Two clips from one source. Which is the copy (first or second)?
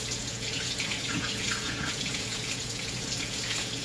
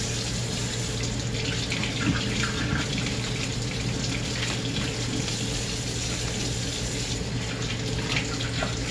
first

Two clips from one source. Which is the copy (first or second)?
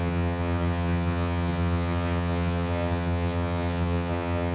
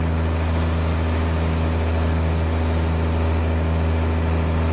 first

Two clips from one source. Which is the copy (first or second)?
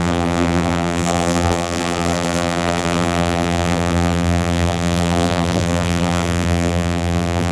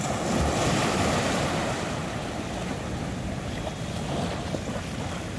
first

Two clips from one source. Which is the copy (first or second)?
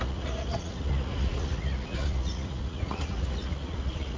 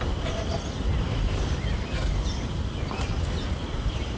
first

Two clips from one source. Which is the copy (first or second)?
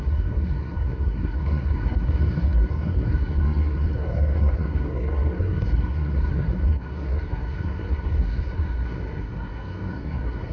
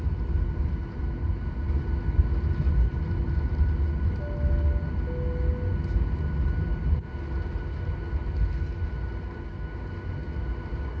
first